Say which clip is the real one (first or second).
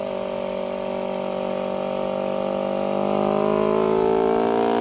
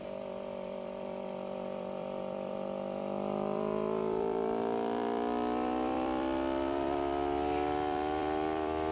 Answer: first